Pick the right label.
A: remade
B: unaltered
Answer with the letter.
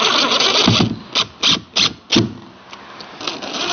B